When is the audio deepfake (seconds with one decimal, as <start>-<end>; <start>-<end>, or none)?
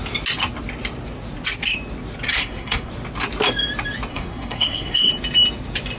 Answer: 2.3-2.9; 4.1-5.1